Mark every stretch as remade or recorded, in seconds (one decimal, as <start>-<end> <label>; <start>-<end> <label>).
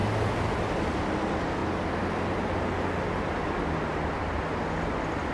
0.0-5.3 recorded